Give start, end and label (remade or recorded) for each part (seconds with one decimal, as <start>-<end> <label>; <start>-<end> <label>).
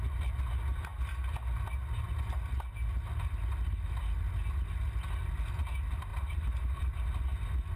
0.0-6.1 recorded; 6.1-6.8 remade; 6.8-7.8 recorded